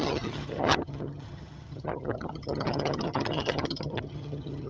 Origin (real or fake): fake